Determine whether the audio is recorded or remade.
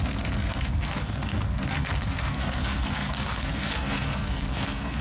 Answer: remade